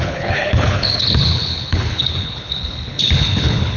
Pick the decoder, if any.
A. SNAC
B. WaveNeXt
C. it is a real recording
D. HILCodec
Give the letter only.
D